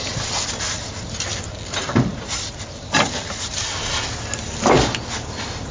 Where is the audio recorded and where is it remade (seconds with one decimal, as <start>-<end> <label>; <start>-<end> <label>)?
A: 0.0-5.7 recorded